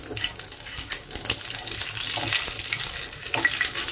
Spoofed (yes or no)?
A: no